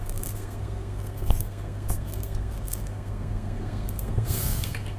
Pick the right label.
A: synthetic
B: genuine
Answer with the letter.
A